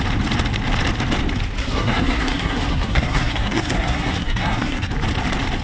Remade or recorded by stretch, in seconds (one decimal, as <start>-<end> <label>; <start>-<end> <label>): 0.0-1.6 recorded; 1.6-4.9 remade; 4.9-5.6 recorded